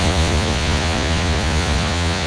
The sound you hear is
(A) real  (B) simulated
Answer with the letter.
B